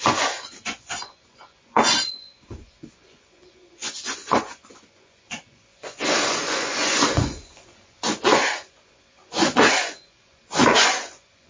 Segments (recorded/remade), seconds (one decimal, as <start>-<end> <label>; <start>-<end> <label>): 0.0-11.5 remade